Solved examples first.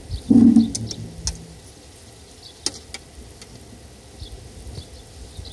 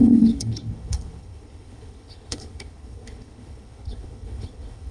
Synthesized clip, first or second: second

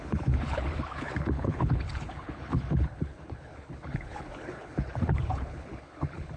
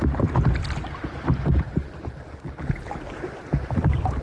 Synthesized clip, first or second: first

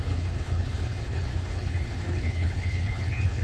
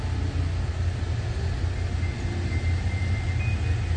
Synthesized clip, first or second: first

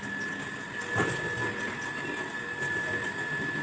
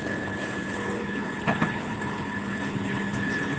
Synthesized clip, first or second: second